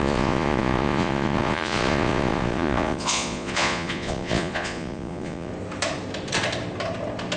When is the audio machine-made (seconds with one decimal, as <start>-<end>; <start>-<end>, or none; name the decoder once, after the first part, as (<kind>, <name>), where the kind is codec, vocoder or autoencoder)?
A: 0.0-5.5 (vocoder, Vocos)